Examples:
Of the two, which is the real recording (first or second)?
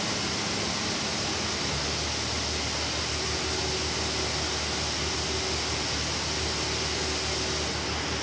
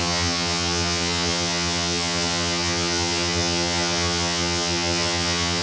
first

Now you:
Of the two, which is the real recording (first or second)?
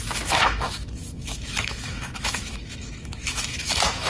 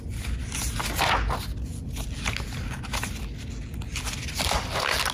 second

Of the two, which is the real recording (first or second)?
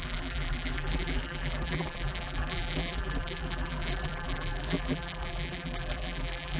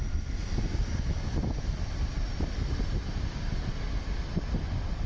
second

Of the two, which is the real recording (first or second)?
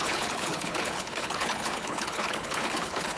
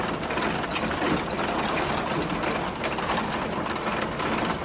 second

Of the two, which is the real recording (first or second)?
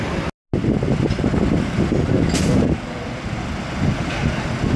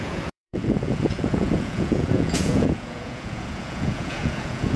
first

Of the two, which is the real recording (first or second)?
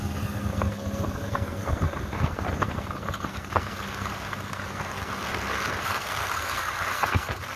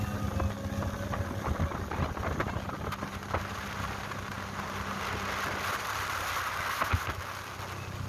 second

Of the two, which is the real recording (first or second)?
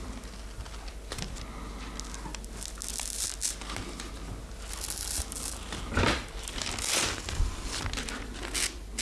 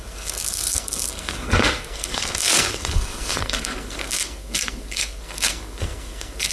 first